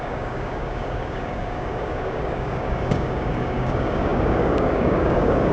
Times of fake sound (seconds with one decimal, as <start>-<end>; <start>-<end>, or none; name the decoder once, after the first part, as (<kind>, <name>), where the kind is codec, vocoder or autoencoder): 0.0-5.5 (codec, DAC)